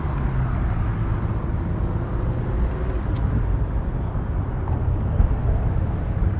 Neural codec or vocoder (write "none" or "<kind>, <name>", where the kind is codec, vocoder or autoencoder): none